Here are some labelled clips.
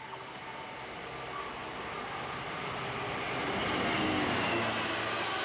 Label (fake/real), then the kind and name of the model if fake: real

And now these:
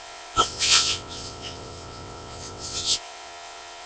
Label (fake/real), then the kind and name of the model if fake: fake, vocoder, WaveNeXt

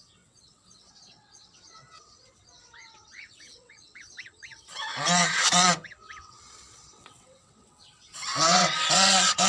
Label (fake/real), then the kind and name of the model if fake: fake, vocoder, WaveNeXt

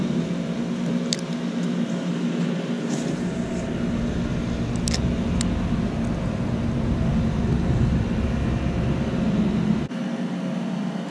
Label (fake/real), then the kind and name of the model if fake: real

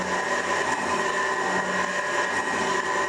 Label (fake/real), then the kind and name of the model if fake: real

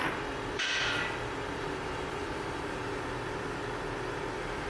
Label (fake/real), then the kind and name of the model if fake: real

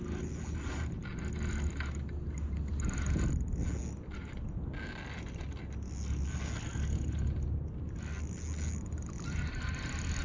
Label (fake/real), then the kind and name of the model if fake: real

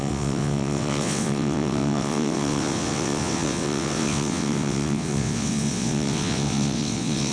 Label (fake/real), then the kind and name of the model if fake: fake, vocoder, WaveNeXt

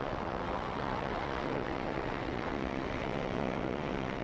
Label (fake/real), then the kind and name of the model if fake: fake, vocoder, WaveNeXt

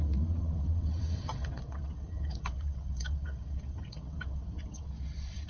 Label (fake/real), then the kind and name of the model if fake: fake, vocoder, WaveNeXt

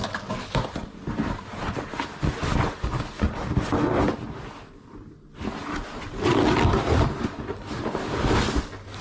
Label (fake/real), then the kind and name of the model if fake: real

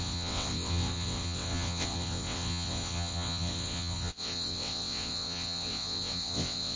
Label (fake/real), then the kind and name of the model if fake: fake, vocoder, WaveNeXt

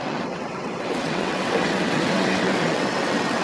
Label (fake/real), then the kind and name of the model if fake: fake, vocoder, WaveNeXt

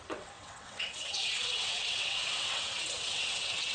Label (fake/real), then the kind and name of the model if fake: fake, vocoder, WaveNeXt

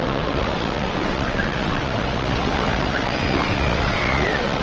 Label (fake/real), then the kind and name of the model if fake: fake, vocoder, WaveNeXt